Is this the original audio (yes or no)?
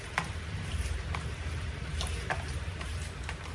no